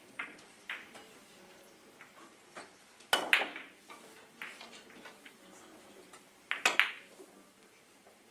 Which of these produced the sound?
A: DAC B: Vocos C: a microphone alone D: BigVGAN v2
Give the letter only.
C